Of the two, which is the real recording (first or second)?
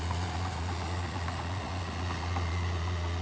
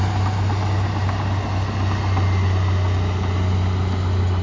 second